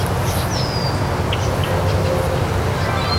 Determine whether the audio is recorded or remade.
recorded